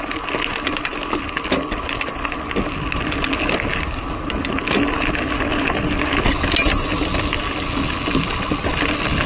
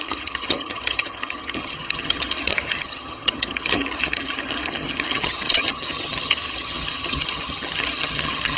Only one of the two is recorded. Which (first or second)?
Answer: first